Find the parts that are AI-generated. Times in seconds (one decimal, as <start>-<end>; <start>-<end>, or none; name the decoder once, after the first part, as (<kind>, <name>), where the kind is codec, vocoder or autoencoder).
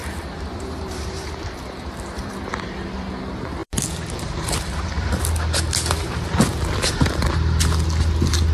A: 0.0-3.1 (vocoder, BigVGAN v2); 3.6-5.1